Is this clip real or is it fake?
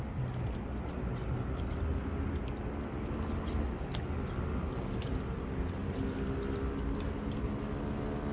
real